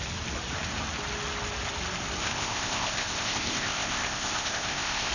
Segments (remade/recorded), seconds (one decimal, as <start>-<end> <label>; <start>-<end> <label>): 0.0-2.2 recorded; 2.2-5.1 remade